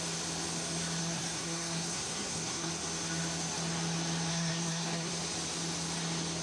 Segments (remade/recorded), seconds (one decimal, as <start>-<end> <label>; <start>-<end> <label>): 0.0-1.0 recorded; 1.0-2.7 remade; 2.7-4.3 recorded; 4.3-5.1 remade; 5.1-6.4 recorded